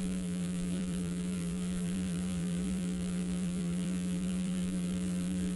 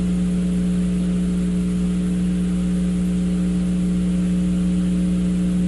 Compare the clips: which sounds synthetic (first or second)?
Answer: first